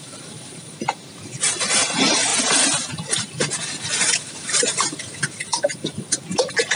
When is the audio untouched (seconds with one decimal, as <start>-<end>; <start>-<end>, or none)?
2.3-4.0